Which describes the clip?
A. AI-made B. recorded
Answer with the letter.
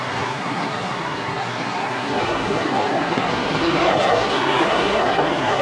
A